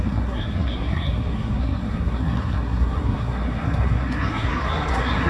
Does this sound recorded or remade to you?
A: remade